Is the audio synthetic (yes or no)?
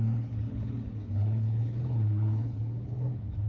yes